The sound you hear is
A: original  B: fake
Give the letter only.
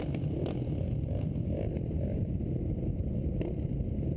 A